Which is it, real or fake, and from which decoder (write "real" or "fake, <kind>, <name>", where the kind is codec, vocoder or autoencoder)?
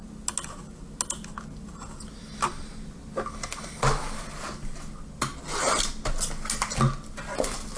real